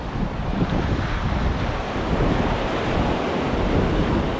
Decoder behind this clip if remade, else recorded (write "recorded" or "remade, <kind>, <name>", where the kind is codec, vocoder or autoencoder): recorded